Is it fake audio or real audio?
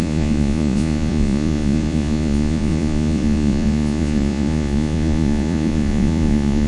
fake